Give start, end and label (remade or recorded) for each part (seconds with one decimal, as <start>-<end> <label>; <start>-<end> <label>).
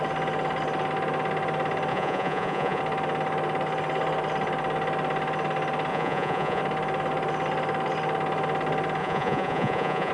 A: 0.0-1.9 recorded; 1.9-2.8 remade; 2.8-5.9 recorded; 5.9-6.6 remade; 6.6-9.0 recorded; 9.0-10.1 remade